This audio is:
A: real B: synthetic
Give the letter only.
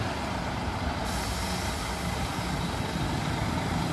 B